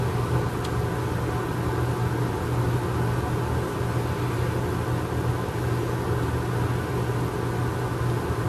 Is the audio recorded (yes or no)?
yes